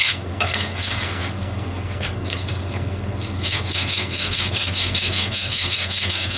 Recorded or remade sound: remade